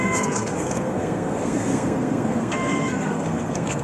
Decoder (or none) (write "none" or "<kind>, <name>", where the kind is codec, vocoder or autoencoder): codec, SNAC